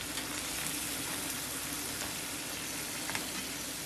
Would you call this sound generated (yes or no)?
no